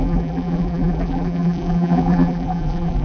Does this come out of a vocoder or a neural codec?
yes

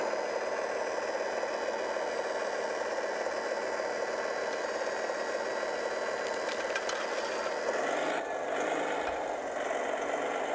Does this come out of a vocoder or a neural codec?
no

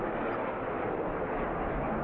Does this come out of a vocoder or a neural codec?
no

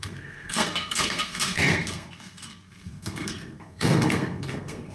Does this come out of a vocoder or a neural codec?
yes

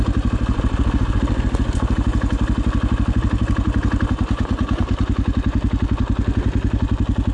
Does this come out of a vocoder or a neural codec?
no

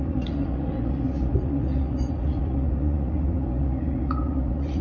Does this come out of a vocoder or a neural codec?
yes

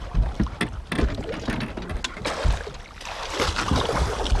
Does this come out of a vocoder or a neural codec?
no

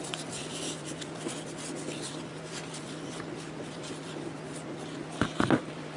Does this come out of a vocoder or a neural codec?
no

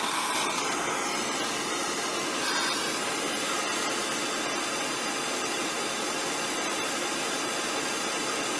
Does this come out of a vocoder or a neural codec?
no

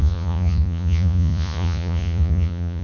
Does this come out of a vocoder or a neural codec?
yes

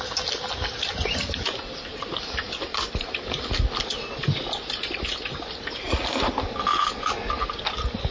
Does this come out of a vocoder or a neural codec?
no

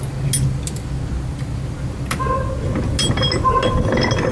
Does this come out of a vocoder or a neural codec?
no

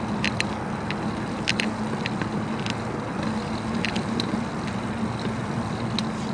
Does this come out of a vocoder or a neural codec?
no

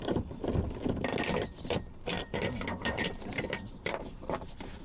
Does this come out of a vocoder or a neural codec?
yes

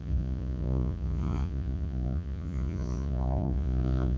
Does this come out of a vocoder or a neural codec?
yes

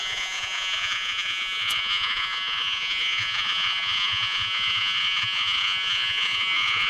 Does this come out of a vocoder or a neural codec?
yes